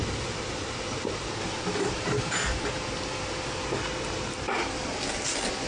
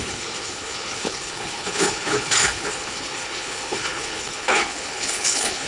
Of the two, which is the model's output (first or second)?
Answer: second